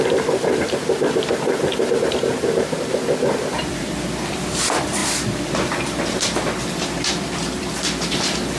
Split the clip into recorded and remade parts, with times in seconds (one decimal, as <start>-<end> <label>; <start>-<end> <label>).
0.0-2.3 remade; 2.3-3.2 recorded; 3.2-8.6 remade